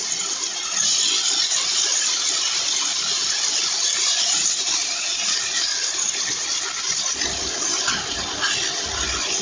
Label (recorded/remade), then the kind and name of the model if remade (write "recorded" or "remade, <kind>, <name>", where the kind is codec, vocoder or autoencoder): recorded